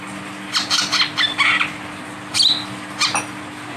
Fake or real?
real